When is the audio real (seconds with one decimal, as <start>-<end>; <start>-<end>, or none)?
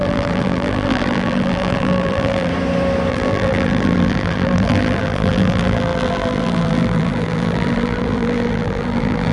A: 2.5-3.1